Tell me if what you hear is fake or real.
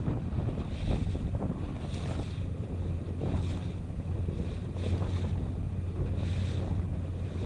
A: real